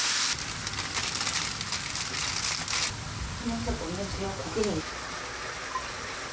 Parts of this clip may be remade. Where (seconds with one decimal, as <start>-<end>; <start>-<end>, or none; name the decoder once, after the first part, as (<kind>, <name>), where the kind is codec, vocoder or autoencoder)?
4.4-4.9 (autoencoder, DAC-VAE)